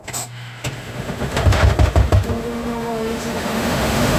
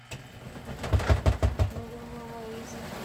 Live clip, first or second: second